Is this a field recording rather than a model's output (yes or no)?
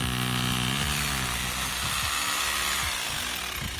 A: yes